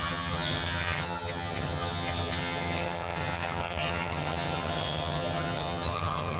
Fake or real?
fake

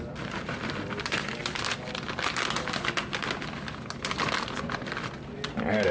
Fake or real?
real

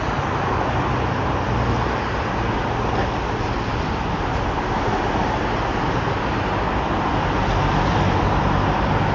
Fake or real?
real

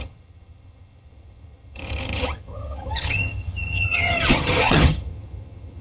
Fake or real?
fake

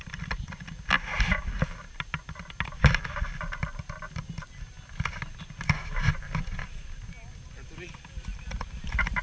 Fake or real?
real